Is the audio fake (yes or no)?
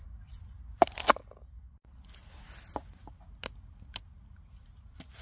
no